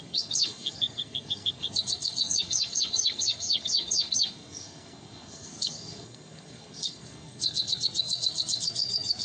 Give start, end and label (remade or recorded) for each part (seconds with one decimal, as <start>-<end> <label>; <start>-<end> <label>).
0.0-9.2 remade